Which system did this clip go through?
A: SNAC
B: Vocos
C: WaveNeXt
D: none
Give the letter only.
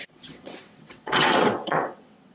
C